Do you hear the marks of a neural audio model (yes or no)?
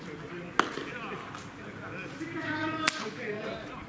no